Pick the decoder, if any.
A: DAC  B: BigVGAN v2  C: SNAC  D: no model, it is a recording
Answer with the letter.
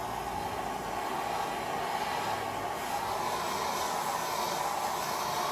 D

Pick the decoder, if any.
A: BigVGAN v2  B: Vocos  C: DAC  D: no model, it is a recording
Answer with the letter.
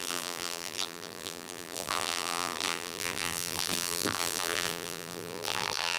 A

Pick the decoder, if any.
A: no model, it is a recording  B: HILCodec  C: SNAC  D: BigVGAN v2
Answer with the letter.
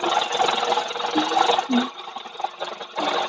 A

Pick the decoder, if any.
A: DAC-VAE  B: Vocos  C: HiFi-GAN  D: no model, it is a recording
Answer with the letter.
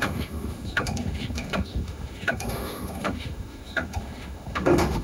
A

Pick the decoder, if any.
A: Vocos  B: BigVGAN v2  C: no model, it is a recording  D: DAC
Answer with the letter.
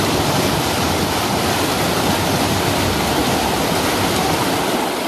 C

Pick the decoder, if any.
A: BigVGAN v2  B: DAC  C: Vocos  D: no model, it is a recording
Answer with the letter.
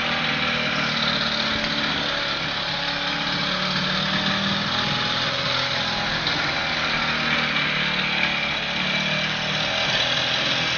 D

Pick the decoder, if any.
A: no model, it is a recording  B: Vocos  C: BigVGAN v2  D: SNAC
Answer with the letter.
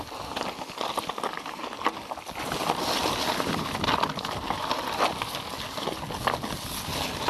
A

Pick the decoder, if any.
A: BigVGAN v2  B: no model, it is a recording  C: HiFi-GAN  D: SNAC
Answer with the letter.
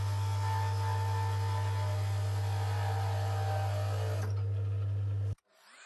B